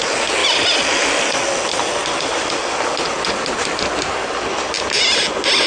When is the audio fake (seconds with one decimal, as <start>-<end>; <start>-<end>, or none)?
none